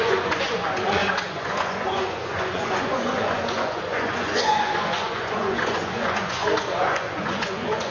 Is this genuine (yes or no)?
no